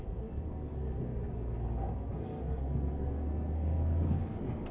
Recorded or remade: remade